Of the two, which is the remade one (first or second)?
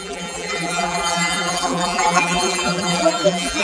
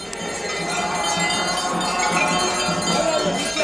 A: first